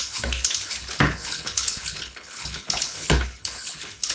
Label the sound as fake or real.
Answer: fake